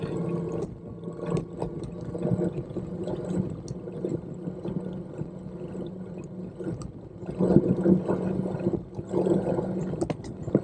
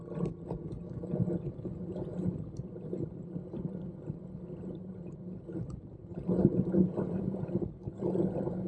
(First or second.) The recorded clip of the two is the first